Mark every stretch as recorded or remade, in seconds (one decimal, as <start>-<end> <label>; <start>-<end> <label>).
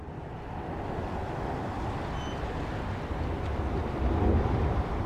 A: 0.0-5.1 recorded